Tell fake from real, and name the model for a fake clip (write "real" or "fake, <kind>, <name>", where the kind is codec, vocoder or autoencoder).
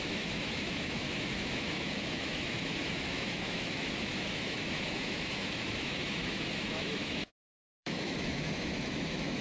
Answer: fake, autoencoder, DAC-VAE